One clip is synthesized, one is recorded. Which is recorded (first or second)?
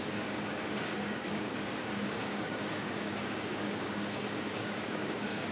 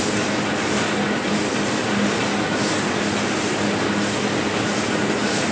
second